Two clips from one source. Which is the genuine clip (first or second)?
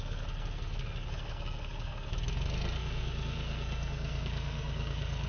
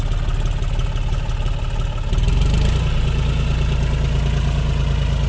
second